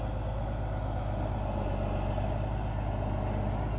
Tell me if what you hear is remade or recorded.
recorded